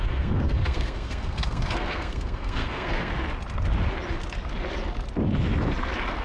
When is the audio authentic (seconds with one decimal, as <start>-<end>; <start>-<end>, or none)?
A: 3.1-6.2